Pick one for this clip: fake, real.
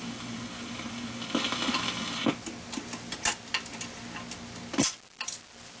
real